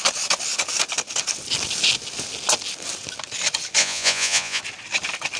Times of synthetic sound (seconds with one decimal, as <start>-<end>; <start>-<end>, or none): 3.8-4.6